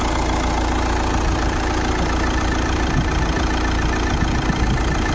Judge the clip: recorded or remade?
recorded